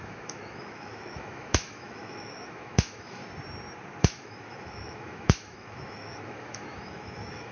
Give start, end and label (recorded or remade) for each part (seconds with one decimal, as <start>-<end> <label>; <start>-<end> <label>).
0.0-3.2 remade; 3.2-4.0 recorded; 4.0-7.5 remade